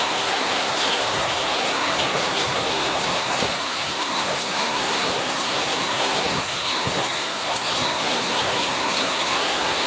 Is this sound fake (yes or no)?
yes